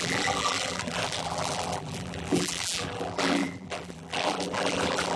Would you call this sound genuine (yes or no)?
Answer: no